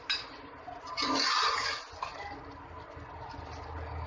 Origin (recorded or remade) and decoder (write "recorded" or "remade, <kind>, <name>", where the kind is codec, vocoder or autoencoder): recorded